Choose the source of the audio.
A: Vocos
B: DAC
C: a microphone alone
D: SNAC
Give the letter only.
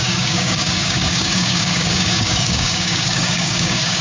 B